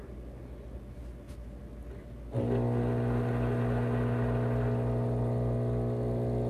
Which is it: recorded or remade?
recorded